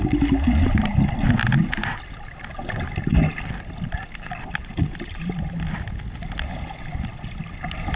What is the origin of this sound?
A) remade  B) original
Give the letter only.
B